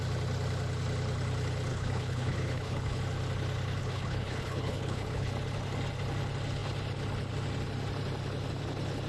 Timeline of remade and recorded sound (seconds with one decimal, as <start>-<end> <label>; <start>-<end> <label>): 0.0-1.7 recorded; 1.7-3.0 remade; 3.0-3.8 recorded; 3.8-5.3 remade; 5.3-9.1 recorded